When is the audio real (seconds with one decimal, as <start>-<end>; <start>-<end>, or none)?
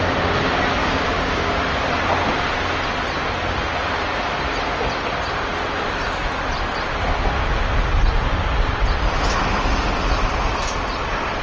0.0-0.8; 1.6-11.4